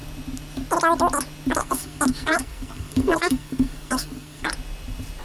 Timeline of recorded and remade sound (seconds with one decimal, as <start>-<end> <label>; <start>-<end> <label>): 0.0-1.6 recorded; 1.6-4.5 remade; 4.5-5.2 recorded